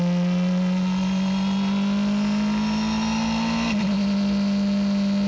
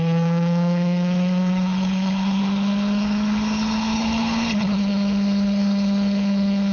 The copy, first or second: second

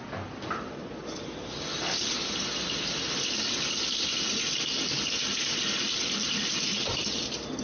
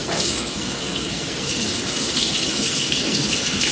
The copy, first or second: second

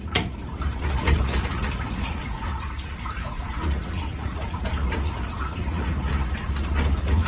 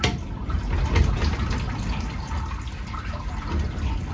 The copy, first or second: first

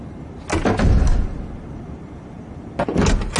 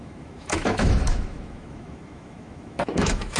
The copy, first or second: second